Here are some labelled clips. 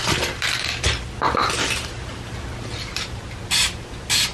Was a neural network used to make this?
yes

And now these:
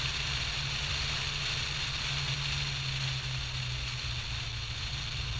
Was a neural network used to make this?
no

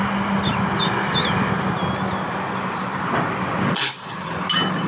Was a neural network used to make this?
no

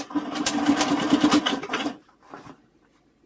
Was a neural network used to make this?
yes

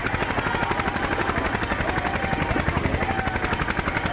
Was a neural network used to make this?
no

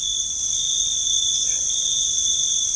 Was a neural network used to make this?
no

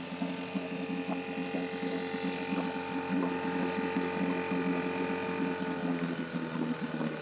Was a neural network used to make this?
no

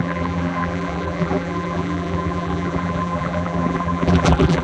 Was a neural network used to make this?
yes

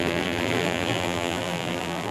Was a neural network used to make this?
yes